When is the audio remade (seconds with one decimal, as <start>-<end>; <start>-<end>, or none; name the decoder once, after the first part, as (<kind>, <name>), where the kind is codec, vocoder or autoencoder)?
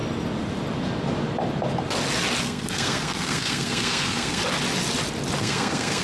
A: 2.4-4.4 (codec, SNAC); 5.4-6.0